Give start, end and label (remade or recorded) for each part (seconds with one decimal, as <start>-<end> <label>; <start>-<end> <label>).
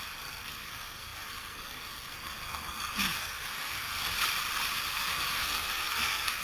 0.0-4.0 remade; 4.0-4.9 recorded; 4.9-6.4 remade